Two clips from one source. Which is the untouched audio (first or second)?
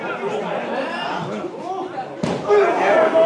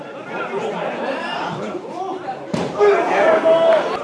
first